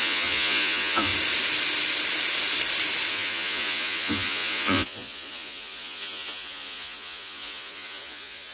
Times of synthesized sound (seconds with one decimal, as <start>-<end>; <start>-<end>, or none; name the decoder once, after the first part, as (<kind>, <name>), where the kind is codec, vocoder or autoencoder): 0.0-1.1 (vocoder, Vocos); 3.1-8.5

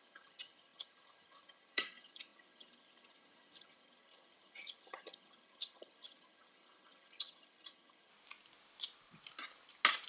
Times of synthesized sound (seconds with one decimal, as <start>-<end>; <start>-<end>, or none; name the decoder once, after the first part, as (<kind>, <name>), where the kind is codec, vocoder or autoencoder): 0.0-8.1 (vocoder, HiFi-GAN)

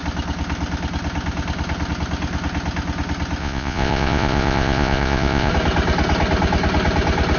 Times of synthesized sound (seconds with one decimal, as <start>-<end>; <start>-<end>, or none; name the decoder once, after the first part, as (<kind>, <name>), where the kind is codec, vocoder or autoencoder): 3.4-5.5 (vocoder, Vocos)